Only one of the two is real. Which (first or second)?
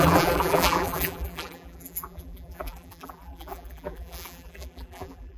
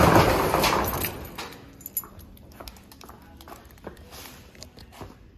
second